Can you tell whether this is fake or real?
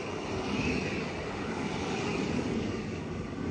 fake